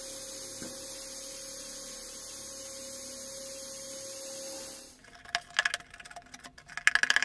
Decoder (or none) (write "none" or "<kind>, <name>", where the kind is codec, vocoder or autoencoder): none